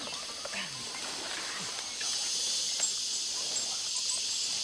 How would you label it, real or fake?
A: real